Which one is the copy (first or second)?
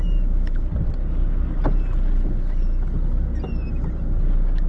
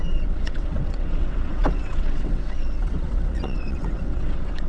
second